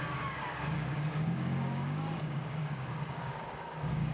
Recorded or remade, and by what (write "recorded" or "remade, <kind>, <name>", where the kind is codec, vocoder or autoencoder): remade, codec, DAC